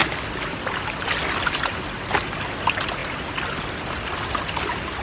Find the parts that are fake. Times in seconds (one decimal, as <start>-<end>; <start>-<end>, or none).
none